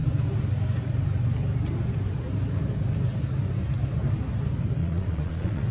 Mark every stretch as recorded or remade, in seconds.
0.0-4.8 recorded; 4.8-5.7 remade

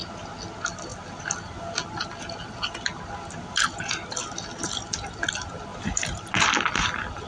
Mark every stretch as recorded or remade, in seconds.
0.0-5.7 recorded; 5.7-6.5 remade; 6.5-7.3 recorded

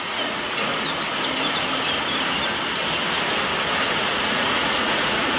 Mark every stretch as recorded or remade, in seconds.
0.0-0.7 remade; 0.7-3.9 recorded; 3.9-5.4 remade

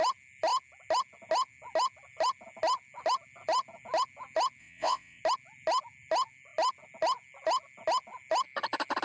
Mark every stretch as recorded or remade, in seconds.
0.0-4.6 recorded; 4.6-5.2 remade; 5.2-9.0 recorded

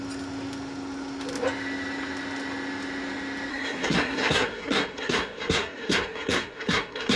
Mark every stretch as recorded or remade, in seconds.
0.0-3.5 recorded; 3.5-7.2 remade

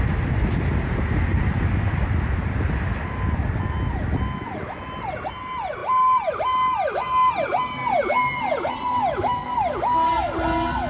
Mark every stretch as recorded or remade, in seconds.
0.0-10.9 recorded

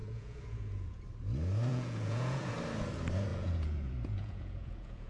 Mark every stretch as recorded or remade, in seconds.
0.0-1.0 remade; 1.0-1.7 recorded; 1.7-2.5 remade; 2.5-3.3 recorded; 3.3-5.1 remade